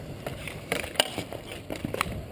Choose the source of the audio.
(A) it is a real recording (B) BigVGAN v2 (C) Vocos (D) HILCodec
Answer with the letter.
B